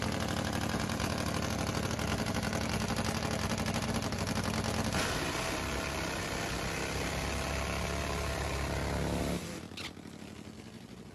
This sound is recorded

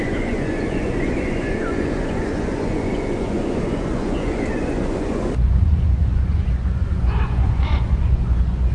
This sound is remade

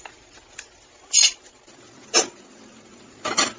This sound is recorded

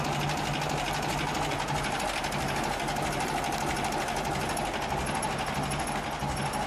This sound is recorded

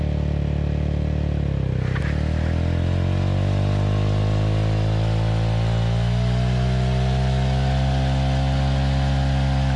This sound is recorded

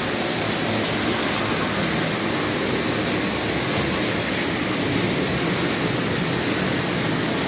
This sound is recorded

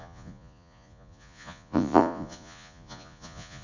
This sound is remade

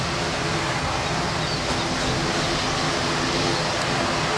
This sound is recorded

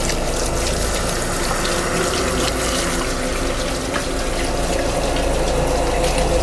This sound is recorded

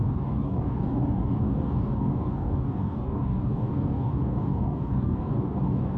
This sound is remade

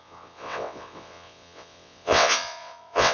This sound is remade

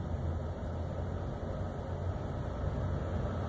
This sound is recorded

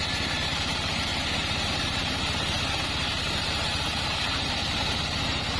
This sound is remade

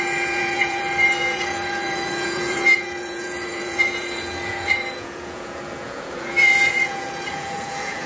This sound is remade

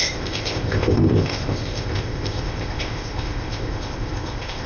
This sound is remade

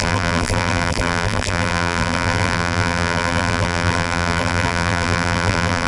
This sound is remade